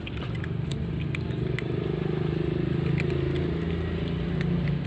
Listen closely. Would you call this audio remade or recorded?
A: recorded